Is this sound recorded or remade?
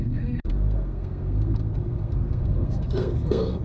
remade